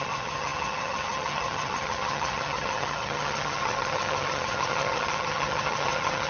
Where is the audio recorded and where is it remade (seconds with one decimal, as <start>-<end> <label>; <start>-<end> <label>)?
0.0-6.3 remade